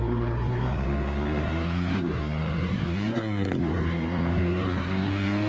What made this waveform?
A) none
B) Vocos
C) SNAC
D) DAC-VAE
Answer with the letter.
C